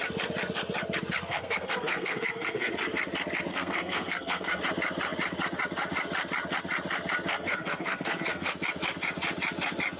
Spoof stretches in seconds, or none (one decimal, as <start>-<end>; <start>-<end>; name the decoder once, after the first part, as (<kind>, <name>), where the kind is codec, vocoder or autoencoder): 1.3-2.7 (codec, SNAC); 3.5-4.6; 7.3-8.5